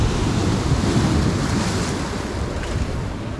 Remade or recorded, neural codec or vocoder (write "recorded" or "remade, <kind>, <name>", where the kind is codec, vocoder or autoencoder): recorded